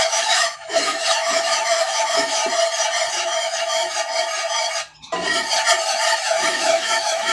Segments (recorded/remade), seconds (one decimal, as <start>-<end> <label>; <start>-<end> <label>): 0.0-2.4 remade; 2.4-3.1 recorded; 3.1-3.8 remade; 3.8-6.2 recorded; 6.2-7.3 remade